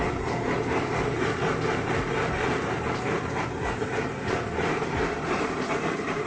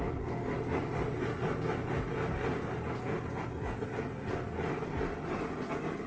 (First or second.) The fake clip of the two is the first